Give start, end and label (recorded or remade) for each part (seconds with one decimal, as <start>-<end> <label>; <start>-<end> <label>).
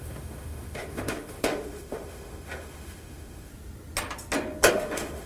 0.0-3.5 remade; 3.5-4.7 recorded; 4.7-5.3 remade